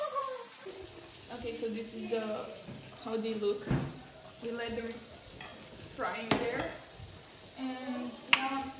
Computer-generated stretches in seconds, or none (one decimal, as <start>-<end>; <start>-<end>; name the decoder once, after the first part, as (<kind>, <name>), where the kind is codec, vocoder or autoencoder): none